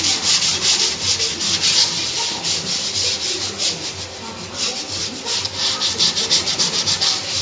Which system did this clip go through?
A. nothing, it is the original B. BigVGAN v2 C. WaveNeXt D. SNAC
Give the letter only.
A